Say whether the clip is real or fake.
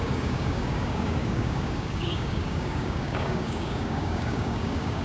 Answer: fake